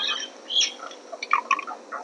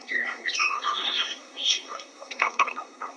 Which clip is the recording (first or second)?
first